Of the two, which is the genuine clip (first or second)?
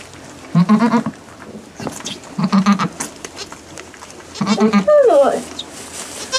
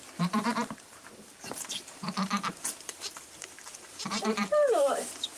first